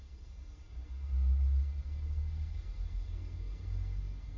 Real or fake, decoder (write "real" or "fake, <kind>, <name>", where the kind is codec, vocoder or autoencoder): fake, codec, SNAC